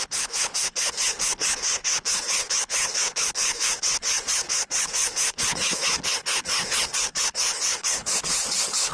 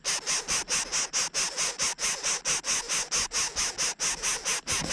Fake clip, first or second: first